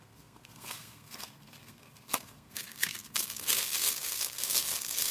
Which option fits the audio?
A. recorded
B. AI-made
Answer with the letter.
B